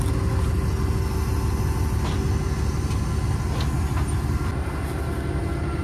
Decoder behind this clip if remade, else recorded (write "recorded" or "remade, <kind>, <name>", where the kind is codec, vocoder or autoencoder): recorded